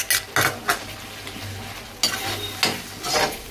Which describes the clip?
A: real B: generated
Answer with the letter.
A